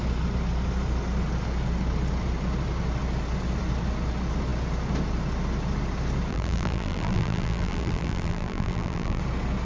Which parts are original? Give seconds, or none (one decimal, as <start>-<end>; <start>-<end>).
0.0-6.3; 9.2-9.7